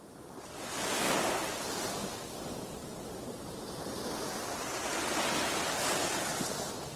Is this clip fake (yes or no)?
no